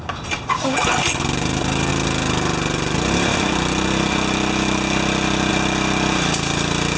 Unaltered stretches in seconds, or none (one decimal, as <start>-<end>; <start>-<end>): 0.0-7.0

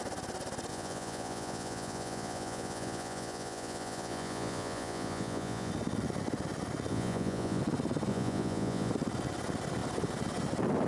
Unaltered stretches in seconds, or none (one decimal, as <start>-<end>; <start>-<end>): 0.0-0.7; 5.7-6.9; 7.6-8.1; 8.9-10.9

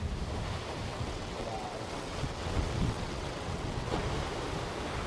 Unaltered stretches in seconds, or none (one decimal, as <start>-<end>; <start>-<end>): 0.0-0.9; 4.0-5.1

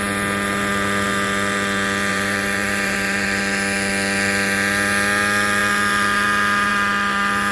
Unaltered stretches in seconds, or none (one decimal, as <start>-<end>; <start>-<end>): 0.0-2.1; 3.4-7.5

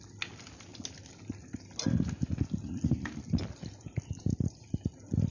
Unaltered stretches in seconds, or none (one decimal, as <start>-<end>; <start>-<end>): 0.0-5.3

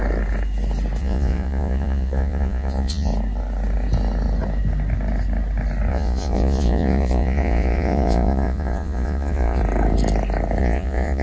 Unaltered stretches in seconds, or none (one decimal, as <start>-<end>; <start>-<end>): 0.0-1.0; 3.1-5.9; 9.6-10.6

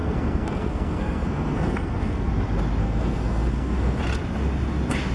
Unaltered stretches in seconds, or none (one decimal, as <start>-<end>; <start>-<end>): 2.3-2.8; 4.0-5.1